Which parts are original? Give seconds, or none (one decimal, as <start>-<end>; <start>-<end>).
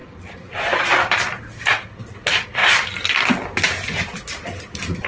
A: 0.0-0.7; 2.6-5.1